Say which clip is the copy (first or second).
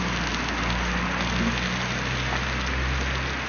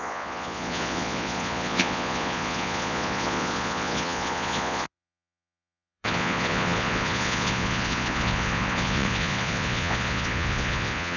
second